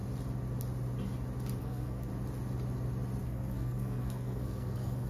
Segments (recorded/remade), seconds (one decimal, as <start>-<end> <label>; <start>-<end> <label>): 0.0-1.6 recorded; 1.6-2.1 remade; 2.1-3.2 recorded; 3.2-5.1 remade